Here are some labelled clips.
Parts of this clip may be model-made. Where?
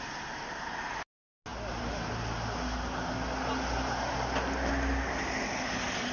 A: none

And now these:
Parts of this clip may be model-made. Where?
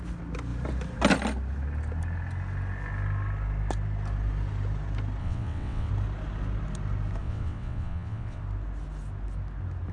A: 5.2-5.9; 7.2-8.4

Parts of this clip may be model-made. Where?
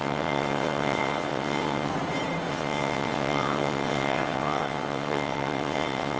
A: 0.0-1.9; 2.5-6.2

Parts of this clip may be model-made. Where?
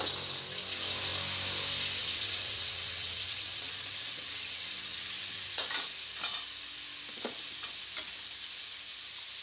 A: 2.0-5.7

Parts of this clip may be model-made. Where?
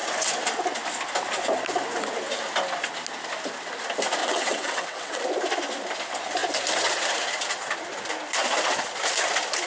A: 4.2-5.2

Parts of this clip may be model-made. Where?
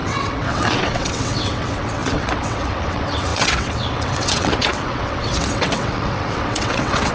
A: 0.0-7.1